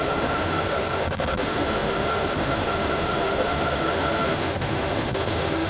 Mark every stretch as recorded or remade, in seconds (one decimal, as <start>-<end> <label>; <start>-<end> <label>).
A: 0.0-5.7 remade

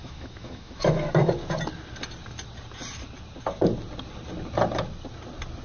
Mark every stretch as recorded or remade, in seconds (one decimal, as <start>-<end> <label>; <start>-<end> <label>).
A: 0.0-1.3 remade; 1.3-5.6 recorded

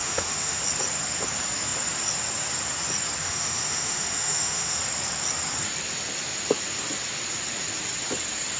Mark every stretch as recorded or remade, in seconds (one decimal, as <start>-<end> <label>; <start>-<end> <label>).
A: 0.0-0.6 remade; 0.6-3.2 recorded; 3.2-4.8 remade; 4.8-8.6 recorded

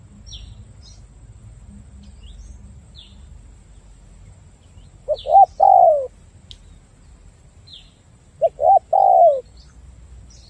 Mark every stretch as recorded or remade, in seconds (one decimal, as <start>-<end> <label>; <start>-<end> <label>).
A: 0.0-10.5 recorded

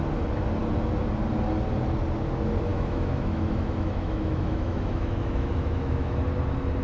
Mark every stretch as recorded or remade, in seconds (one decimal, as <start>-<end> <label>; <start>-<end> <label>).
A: 0.0-2.7 recorded; 2.7-6.2 remade; 6.2-6.8 recorded